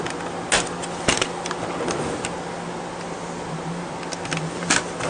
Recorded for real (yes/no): yes